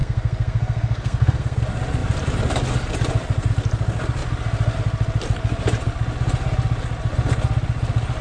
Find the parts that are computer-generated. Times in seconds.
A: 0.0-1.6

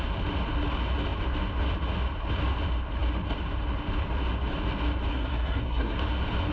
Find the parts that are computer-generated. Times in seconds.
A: 5.1-6.0

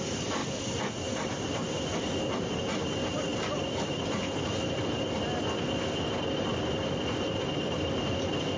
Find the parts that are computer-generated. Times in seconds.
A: 0.0-0.4; 1.1-3.3; 7.0-8.6